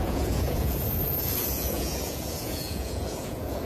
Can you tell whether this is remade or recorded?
remade